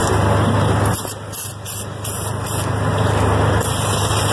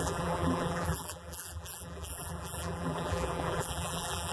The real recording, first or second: first